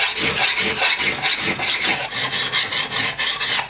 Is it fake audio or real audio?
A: real